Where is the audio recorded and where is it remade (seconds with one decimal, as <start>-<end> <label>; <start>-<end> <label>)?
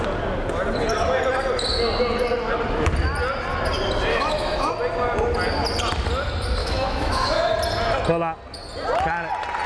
0.0-4.1 recorded; 4.1-4.7 remade; 4.7-6.6 recorded; 6.6-7.6 remade; 7.6-9.7 recorded